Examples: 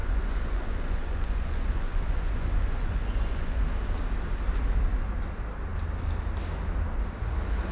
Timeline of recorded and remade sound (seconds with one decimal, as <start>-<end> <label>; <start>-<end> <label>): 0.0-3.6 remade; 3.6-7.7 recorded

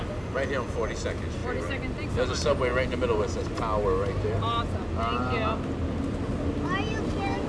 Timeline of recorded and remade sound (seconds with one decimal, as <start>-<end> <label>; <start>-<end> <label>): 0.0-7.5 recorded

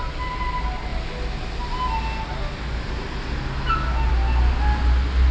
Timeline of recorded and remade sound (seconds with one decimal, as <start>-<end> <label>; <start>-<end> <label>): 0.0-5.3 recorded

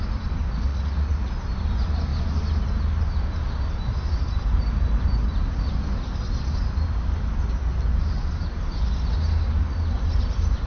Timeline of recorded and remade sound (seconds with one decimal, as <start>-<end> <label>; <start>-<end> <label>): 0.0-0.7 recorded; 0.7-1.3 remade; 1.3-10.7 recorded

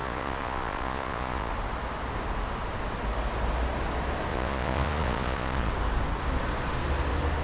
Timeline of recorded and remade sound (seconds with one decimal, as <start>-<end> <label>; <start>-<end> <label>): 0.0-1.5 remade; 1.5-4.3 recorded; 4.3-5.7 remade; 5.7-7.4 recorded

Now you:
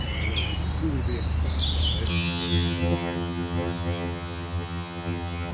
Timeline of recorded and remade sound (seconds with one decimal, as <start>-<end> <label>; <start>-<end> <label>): 0.0-2.1 recorded; 2.1-5.5 remade

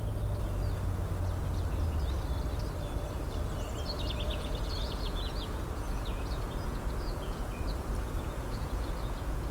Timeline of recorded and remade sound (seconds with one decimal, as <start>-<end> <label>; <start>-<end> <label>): 0.0-4.3 recorded; 4.3-9.5 remade